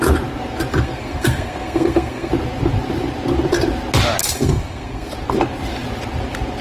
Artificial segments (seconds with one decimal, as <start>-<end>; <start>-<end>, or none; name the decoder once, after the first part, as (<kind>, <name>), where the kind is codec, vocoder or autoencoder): 0.7-2.3 (codec, SNAC); 4.2-5.1